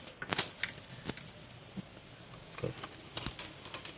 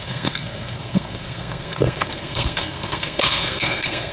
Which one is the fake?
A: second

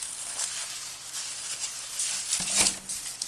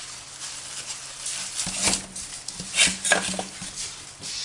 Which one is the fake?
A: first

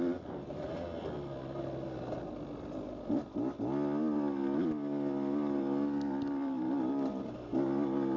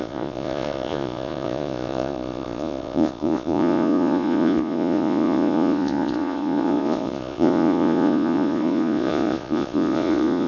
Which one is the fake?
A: second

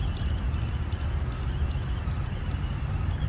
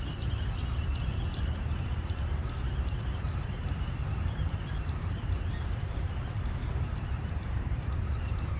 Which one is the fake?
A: second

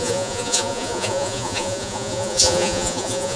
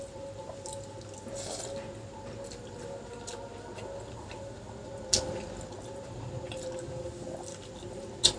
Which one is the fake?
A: first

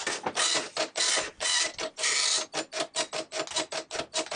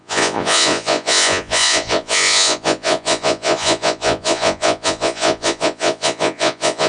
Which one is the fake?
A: second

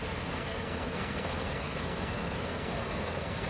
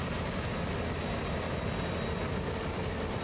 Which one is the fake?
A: first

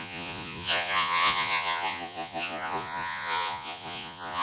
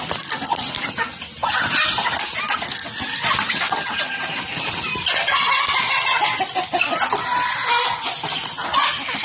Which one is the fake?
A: first